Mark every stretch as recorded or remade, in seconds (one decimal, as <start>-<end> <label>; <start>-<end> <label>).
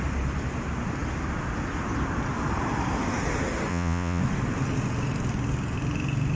0.0-3.7 recorded; 3.7-4.2 remade; 4.2-6.3 recorded